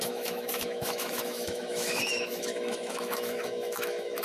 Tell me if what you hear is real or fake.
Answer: fake